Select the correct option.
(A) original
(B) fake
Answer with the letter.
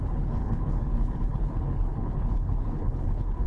B